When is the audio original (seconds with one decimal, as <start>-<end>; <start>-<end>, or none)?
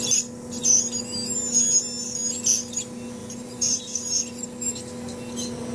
0.0-3.2; 3.8-5.7